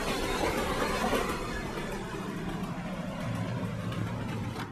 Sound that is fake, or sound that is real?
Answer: fake